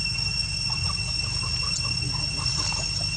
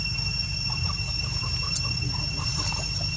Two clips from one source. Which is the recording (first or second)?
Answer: first